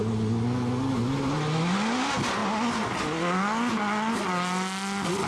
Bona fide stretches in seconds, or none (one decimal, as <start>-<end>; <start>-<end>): 0.0-5.3